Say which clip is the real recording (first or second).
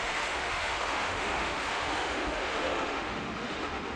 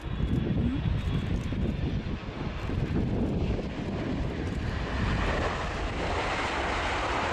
second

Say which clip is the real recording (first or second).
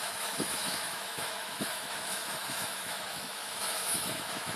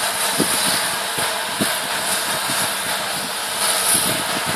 second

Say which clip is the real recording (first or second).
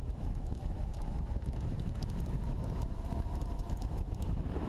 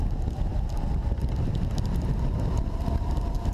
second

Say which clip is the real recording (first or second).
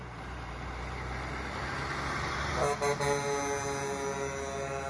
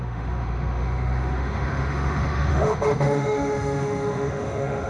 first